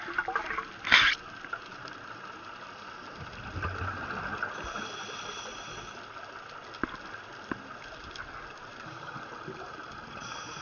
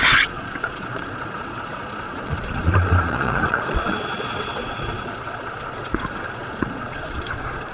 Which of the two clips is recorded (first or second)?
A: first